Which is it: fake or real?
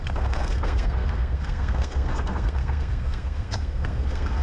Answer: fake